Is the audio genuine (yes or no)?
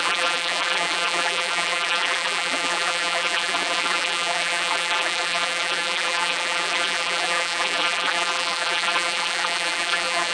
no